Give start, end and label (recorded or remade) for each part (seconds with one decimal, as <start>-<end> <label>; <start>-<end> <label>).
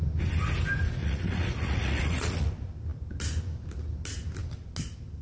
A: 0.0-1.0 recorded; 1.0-2.5 remade; 2.5-5.2 recorded